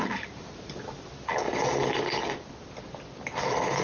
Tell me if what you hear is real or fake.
real